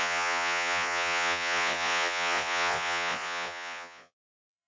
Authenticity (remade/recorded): remade